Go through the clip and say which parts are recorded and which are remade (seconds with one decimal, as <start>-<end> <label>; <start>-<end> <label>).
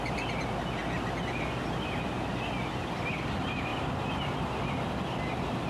0.0-5.7 recorded